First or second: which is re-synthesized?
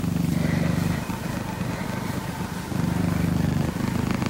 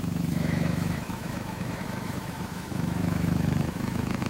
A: second